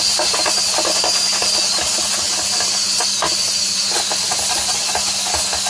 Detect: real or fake real